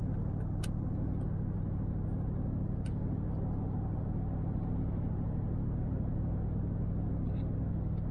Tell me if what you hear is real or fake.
real